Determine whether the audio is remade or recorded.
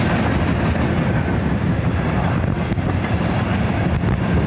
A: recorded